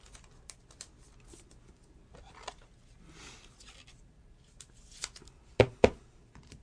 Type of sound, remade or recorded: recorded